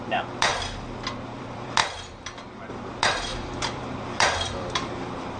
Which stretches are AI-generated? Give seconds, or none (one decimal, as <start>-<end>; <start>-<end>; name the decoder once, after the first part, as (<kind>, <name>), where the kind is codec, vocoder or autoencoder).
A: 0.0-0.5 (vocoder, BigVGAN v2); 1.3-1.8; 2.7-5.4